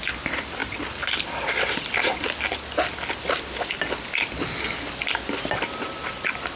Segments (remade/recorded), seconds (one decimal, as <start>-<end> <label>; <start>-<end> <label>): 0.0-6.6 recorded